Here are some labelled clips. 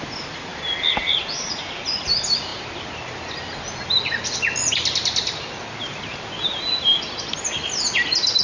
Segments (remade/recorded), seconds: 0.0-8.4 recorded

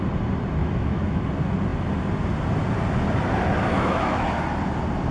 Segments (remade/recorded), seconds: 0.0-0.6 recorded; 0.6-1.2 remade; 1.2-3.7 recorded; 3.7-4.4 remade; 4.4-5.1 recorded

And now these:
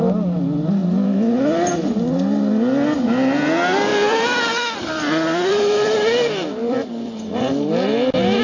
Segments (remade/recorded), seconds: 0.0-0.8 recorded; 0.8-1.7 remade; 1.7-3.9 recorded; 3.9-8.4 remade